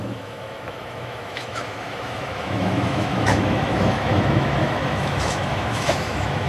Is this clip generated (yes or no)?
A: yes